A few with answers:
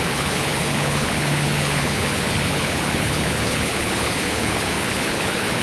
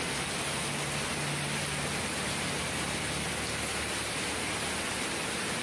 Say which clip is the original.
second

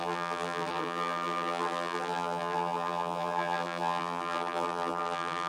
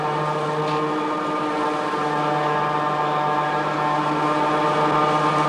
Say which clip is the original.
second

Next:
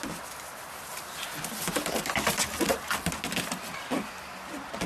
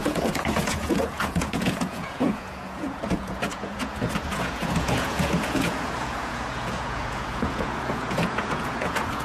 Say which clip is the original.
first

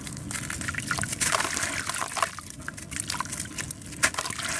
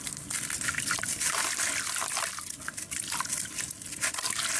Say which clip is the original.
first